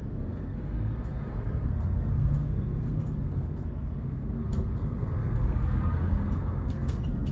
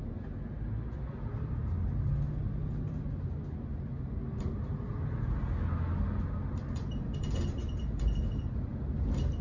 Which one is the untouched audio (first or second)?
second